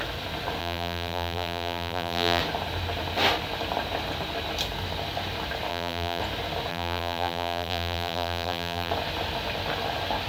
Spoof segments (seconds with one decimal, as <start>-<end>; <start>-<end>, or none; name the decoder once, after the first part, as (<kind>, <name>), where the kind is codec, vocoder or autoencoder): 0.6-2.4 (vocoder, BigVGAN v2); 5.7-6.2; 6.7-8.9